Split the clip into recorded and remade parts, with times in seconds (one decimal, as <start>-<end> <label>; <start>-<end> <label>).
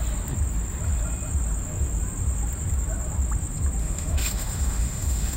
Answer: 0.0-3.8 recorded; 3.8-5.4 remade